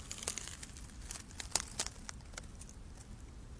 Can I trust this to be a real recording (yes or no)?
yes